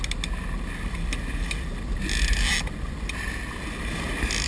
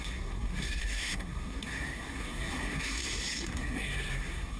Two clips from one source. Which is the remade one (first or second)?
second